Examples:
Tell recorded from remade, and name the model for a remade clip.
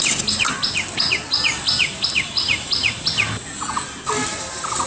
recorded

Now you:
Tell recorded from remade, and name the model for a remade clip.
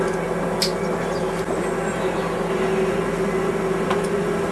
recorded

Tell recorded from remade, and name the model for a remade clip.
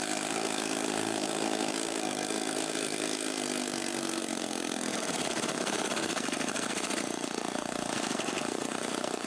remade, codec, SNAC